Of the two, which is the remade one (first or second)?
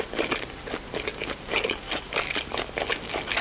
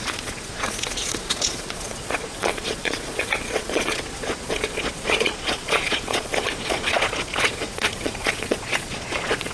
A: second